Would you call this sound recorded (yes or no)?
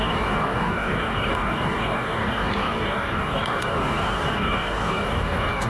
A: no